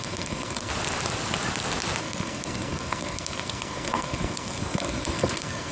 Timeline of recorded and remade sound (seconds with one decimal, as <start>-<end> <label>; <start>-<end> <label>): 0.0-0.7 remade; 0.7-2.0 recorded; 2.0-5.7 remade